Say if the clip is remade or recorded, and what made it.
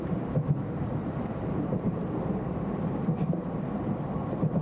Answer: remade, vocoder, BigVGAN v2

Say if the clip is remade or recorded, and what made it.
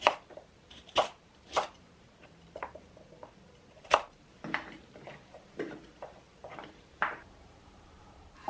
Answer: remade, vocoder, BigVGAN v2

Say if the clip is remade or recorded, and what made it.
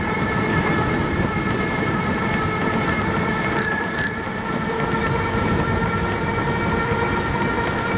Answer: recorded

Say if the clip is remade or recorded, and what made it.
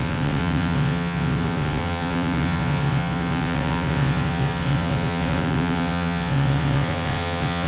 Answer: remade, vocoder, WaveNeXt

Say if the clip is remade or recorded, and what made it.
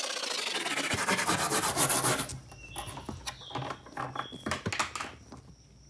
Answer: recorded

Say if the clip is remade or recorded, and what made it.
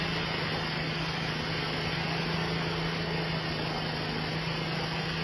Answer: recorded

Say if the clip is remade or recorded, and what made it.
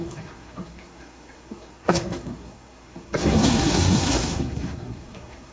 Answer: remade, codec, SNAC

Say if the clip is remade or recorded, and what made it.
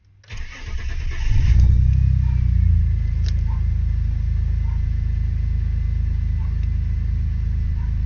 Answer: recorded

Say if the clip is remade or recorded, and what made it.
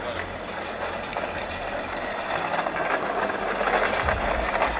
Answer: recorded